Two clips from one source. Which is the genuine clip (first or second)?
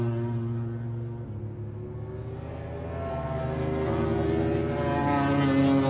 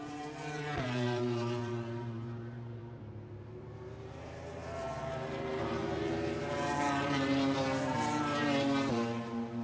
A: first